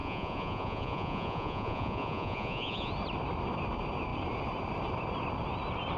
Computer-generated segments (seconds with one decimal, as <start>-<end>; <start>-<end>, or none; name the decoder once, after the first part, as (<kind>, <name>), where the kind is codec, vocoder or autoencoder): 0.0-2.9 (vocoder, Vocos)